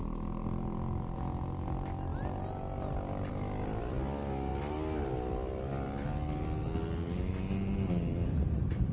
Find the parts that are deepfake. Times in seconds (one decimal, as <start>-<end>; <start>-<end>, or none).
none